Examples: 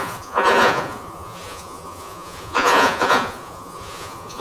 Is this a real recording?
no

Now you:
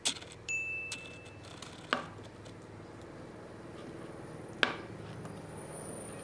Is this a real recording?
yes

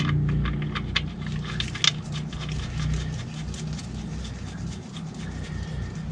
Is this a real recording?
yes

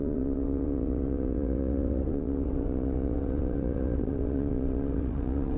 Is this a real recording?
no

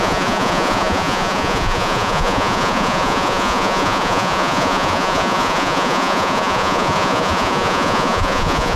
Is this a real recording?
no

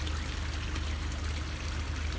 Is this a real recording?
yes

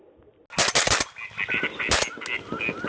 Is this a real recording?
yes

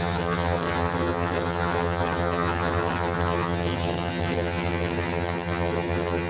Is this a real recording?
no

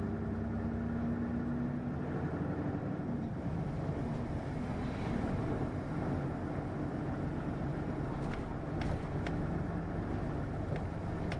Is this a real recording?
yes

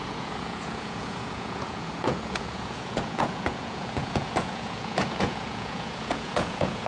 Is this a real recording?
no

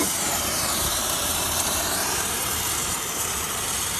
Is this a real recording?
no